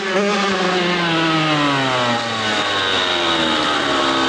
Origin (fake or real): real